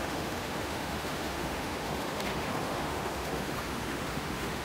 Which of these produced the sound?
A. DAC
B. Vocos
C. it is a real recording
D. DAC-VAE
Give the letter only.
D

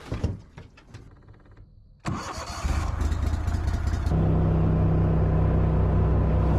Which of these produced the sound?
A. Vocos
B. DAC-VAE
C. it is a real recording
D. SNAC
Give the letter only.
C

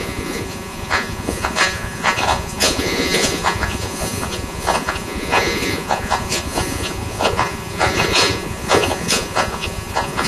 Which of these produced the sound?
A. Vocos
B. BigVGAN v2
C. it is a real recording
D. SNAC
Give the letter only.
A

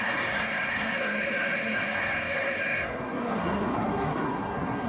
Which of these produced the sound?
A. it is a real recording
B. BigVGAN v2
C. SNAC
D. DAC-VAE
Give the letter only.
C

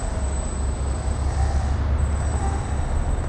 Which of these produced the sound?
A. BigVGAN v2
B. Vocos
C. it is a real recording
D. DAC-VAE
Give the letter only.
C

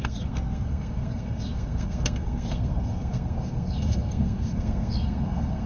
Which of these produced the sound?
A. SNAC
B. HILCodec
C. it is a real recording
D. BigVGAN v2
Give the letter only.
A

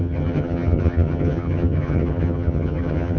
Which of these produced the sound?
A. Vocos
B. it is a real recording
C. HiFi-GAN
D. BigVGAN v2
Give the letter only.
C